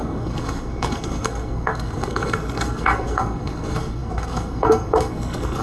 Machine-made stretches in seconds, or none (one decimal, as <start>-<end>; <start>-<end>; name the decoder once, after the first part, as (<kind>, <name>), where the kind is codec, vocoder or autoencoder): 0.0-5.6 (codec, SNAC)